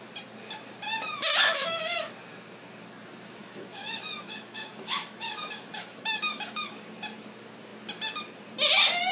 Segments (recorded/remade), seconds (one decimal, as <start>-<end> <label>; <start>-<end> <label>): 0.0-0.9 recorded; 0.9-2.1 remade; 2.1-3.4 recorded; 3.4-6.9 remade; 6.9-9.1 recorded